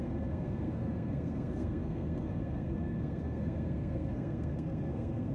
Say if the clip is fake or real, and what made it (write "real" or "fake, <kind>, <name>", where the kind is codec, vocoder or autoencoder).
fake, codec, SNAC